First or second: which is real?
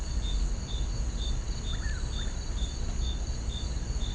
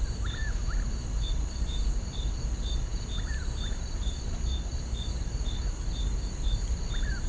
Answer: first